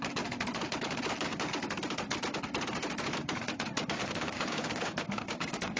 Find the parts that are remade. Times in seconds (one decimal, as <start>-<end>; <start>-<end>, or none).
4.0-5.8